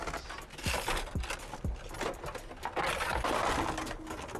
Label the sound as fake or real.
real